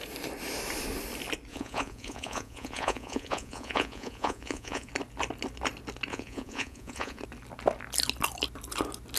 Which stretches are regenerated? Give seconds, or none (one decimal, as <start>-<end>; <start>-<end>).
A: 1.5-4.9; 6.1-7.2